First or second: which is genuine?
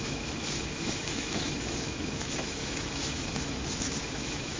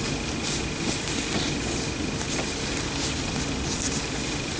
second